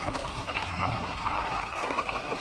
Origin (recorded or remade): remade